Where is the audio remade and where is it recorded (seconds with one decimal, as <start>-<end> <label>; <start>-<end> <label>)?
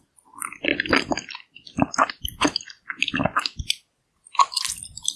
0.0-5.2 recorded